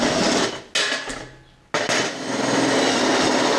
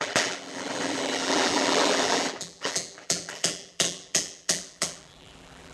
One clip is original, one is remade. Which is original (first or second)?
first